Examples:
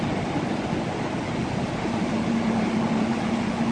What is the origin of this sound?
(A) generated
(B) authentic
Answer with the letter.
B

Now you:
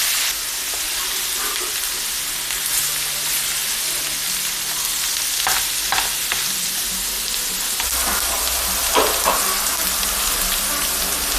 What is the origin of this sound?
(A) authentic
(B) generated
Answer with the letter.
A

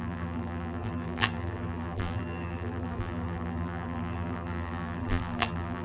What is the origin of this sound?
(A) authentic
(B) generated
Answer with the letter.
B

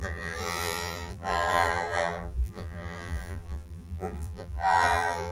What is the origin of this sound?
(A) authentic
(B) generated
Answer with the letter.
B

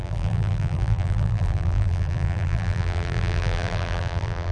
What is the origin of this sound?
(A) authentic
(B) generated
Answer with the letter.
B